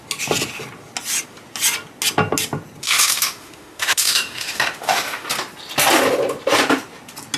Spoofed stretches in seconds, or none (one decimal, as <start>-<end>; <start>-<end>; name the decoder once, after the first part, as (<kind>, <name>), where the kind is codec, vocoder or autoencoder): 2.8-5.3 (autoencoder, DAC-VAE)